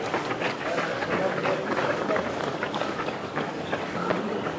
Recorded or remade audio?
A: remade